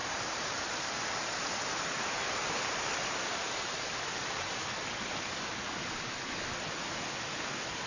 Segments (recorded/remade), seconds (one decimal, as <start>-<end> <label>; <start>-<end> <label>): 0.0-4.7 remade; 4.7-7.9 recorded

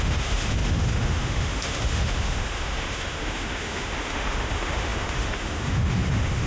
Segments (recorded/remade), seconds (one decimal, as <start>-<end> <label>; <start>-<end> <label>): 0.0-6.5 remade

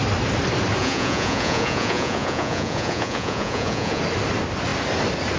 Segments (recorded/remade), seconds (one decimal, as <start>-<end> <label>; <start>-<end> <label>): 0.0-0.8 recorded; 0.8-4.0 remade; 4.0-5.4 recorded

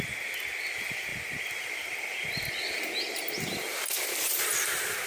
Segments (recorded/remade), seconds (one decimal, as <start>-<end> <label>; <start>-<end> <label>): 0.0-5.1 recorded

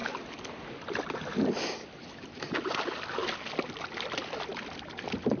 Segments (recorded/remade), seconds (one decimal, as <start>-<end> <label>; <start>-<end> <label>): 0.0-5.4 recorded

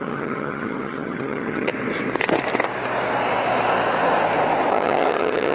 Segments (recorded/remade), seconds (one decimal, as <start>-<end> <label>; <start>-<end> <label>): 0.0-1.7 remade; 1.7-4.7 recorded; 4.7-5.5 remade